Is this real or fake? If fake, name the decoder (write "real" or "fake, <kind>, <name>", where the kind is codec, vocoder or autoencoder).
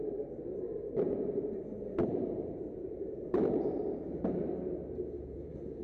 fake, vocoder, BigVGAN v2